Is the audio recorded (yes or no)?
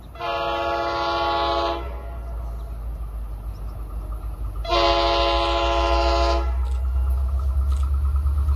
yes